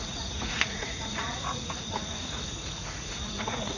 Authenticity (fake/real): fake